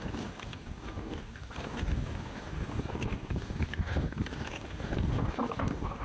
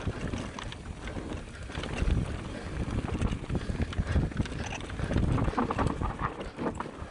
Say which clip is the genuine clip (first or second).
second